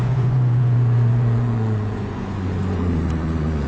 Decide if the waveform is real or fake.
fake